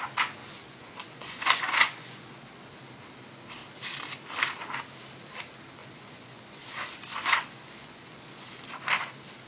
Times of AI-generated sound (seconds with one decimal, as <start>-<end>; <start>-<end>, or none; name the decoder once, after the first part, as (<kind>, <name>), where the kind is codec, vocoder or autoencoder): 0.4-2.3 (vocoder, Vocos); 5.8-8.6